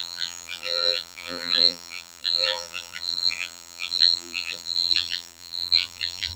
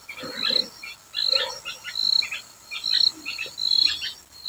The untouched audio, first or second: second